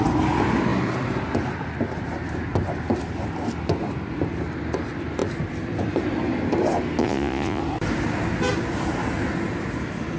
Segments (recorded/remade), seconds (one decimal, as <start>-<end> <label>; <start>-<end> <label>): 0.0-7.0 recorded; 7.0-7.6 remade; 7.6-10.2 recorded